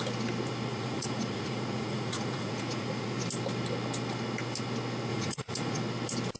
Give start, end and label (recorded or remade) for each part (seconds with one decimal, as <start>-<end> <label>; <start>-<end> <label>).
0.0-0.7 recorded; 0.7-3.2 remade; 3.2-5.1 recorded; 5.1-5.8 remade; 5.8-6.4 recorded